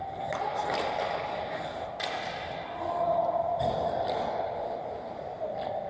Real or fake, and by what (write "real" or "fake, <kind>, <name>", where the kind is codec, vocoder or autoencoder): real